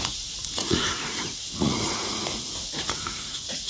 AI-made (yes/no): yes